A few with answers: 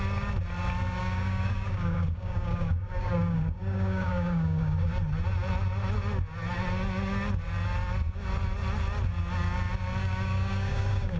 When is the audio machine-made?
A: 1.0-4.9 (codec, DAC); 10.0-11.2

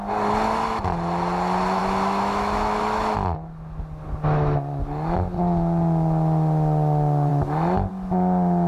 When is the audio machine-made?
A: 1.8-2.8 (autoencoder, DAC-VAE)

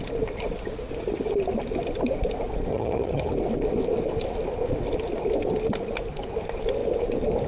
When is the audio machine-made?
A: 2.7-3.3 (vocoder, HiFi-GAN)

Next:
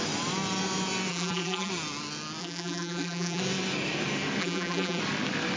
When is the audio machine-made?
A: 1.1-1.7 (vocoder, BigVGAN v2); 2.4-3.4; 4.4-5.0

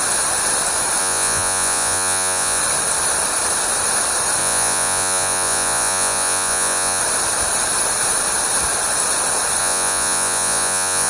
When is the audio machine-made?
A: 1.0-2.6 (vocoder, Vocos); 4.4-7.0; 9.6-11.1